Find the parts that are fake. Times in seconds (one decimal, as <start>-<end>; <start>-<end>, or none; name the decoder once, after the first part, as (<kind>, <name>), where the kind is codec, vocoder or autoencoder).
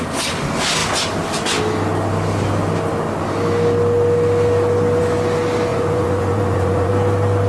5.7-6.9 (vocoder, Vocos)